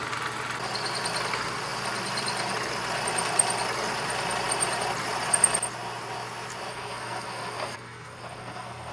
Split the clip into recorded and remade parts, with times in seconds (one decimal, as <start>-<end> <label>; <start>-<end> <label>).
0.0-6.7 recorded; 6.7-8.9 remade